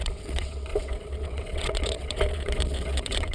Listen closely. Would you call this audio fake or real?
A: fake